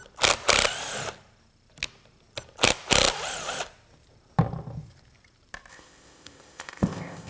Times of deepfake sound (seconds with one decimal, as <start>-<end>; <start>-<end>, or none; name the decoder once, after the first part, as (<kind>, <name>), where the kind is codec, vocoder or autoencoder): 5.7-7.3 (codec, ZipCodec)